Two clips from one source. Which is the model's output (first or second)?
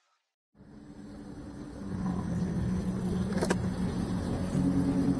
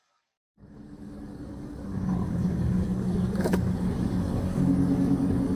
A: second